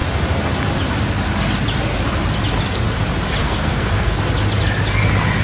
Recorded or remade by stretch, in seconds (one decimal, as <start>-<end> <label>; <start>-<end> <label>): 0.0-3.4 recorded; 3.4-4.2 remade; 4.2-5.4 recorded